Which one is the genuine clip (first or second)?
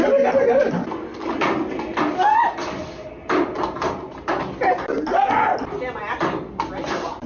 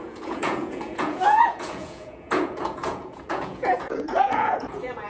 first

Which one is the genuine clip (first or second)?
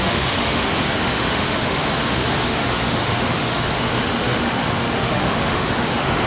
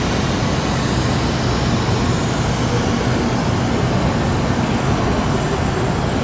second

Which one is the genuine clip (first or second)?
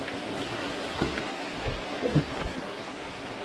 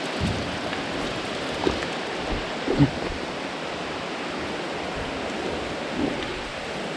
second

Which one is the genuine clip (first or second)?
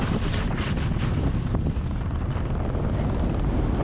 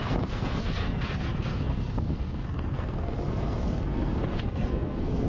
first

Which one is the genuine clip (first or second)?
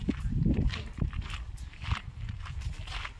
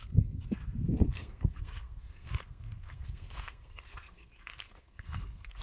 first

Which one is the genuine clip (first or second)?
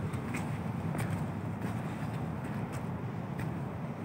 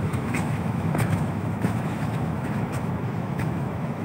first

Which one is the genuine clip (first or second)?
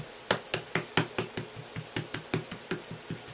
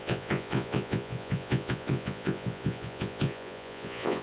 first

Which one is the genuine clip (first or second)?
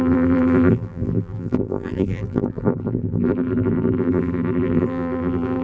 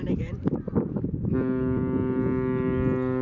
second